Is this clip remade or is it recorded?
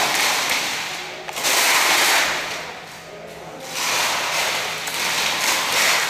recorded